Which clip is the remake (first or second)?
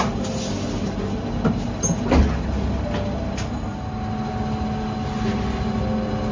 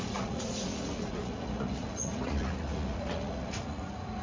second